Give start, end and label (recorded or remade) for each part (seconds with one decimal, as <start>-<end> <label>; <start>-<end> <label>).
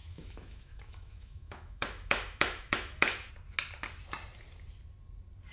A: 0.0-3.3 remade; 3.3-5.5 recorded